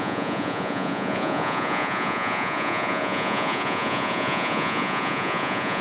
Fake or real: fake